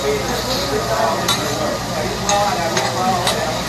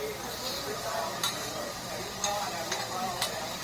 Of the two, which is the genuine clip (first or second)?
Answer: first